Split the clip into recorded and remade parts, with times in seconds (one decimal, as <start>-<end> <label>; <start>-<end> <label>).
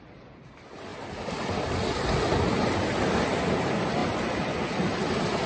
0.0-5.5 recorded